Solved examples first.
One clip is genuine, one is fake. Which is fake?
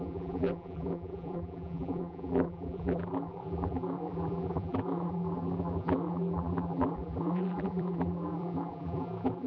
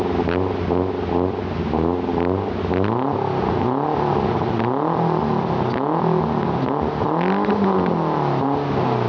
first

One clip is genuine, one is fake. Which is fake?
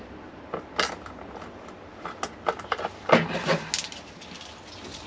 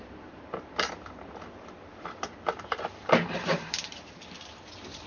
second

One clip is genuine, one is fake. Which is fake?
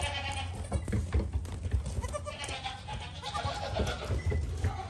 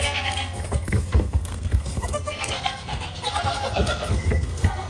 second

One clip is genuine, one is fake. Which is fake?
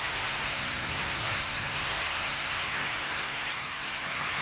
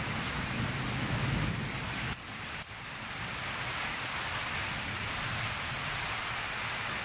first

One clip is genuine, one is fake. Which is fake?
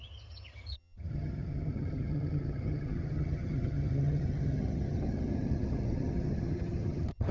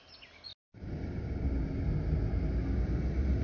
first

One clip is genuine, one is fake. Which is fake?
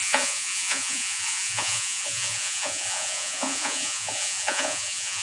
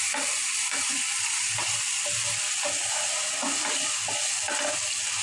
first